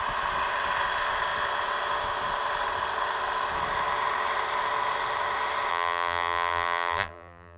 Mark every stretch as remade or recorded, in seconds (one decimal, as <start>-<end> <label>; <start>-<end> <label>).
0.0-5.7 recorded; 5.7-7.6 remade